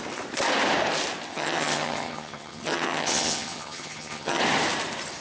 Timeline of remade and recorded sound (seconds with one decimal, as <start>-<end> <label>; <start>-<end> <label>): 0.0-1.3 recorded; 1.3-4.4 remade; 4.4-5.2 recorded